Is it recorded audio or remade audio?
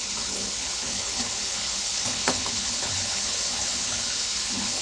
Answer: remade